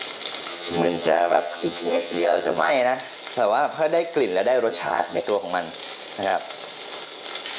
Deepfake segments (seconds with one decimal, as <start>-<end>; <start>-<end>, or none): 0.5-2.7; 4.7-5.2